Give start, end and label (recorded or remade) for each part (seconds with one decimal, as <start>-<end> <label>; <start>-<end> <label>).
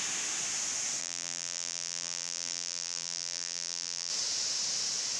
0.0-1.0 recorded; 1.0-4.1 remade; 4.1-5.2 recorded